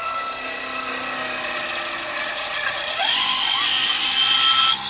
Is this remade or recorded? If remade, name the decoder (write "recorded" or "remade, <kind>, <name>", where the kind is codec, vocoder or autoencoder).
recorded